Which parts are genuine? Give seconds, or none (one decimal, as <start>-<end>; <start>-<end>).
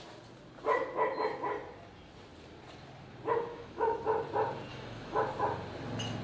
0.0-3.5; 4.0-4.7; 5.2-6.2